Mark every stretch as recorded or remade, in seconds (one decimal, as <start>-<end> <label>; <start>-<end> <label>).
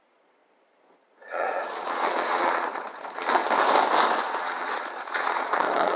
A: 0.0-3.4 remade; 3.4-4.2 recorded; 4.2-6.0 remade